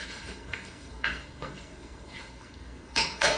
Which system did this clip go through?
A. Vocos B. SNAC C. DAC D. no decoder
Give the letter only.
B